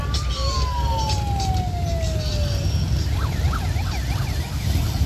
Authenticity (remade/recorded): recorded